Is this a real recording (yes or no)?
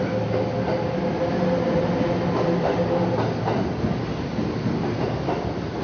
yes